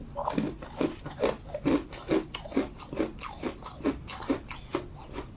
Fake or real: real